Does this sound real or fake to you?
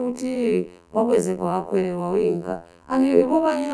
fake